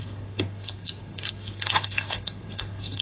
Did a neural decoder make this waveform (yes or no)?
yes